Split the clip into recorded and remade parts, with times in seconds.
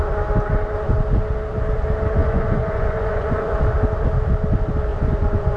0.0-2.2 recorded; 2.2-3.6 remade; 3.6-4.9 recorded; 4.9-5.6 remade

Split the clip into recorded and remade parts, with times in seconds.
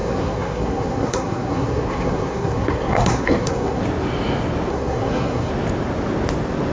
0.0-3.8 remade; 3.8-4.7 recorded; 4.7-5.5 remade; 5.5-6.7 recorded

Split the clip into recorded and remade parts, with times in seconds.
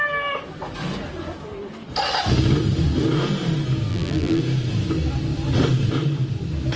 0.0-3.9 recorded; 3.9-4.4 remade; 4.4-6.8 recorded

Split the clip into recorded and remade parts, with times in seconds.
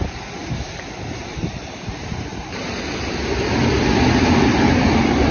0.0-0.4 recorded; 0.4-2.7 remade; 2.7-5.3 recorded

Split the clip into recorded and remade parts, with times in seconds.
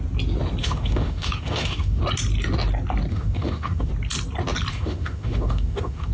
0.0-0.6 recorded; 0.6-2.0 remade; 2.0-3.1 recorded; 3.1-3.9 remade; 3.9-4.7 recorded; 4.7-6.1 remade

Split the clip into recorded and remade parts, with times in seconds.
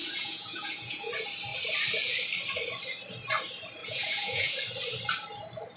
0.0-1.1 remade; 1.1-3.8 recorded; 3.8-4.5 remade; 4.5-5.8 recorded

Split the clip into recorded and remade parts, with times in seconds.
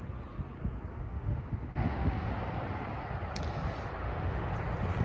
0.0-0.9 recorded; 0.9-2.3 remade; 2.3-4.0 recorded; 4.0-4.5 remade; 4.5-5.0 recorded